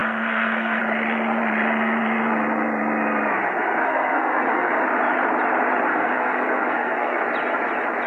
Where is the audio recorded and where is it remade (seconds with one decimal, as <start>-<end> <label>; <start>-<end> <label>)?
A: 0.0-0.8 remade; 0.8-3.8 recorded; 3.8-4.8 remade; 4.8-5.9 recorded; 5.9-7.2 remade; 7.2-8.1 recorded